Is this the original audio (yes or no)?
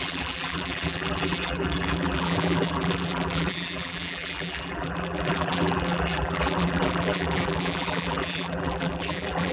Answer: no